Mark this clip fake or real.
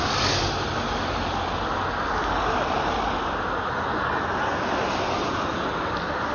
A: real